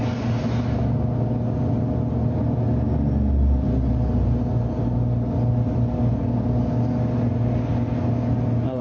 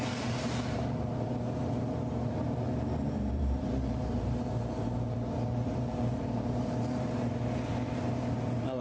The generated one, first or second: second